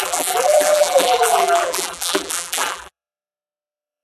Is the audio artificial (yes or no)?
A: yes